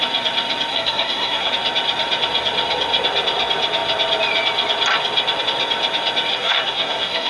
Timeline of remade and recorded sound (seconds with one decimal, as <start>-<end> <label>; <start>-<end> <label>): 0.0-0.7 recorded; 0.7-1.5 remade; 1.5-6.3 recorded; 6.3-7.3 remade